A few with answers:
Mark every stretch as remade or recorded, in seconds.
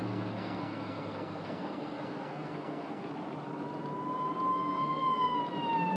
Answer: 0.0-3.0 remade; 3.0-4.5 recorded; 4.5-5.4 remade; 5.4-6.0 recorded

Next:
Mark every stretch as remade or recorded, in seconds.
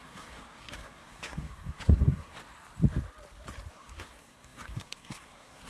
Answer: 0.0-2.4 remade; 2.4-3.7 recorded; 3.7-5.7 remade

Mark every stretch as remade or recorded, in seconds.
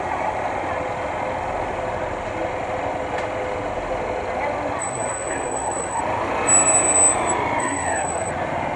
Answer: 0.0-4.8 recorded; 4.8-6.0 remade; 6.0-7.6 recorded; 7.6-8.3 remade; 8.3-8.8 recorded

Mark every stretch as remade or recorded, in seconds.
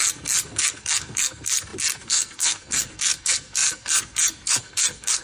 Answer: 0.0-5.2 remade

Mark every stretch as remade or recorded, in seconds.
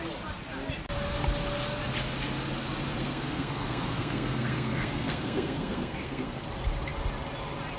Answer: 0.0-3.0 recorded; 3.0-6.4 remade; 6.4-7.8 recorded